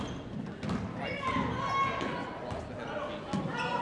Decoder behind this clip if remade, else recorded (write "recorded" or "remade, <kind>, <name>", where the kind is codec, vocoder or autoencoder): recorded